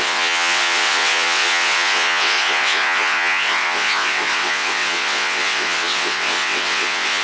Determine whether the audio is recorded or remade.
remade